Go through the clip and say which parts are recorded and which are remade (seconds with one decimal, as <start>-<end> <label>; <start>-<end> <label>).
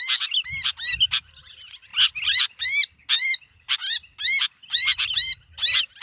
0.0-6.0 recorded